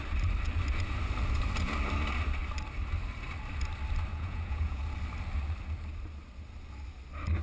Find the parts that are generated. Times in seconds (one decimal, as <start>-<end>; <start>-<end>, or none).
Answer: 4.1-4.8